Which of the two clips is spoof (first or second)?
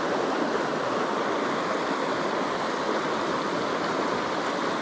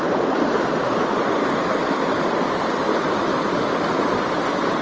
second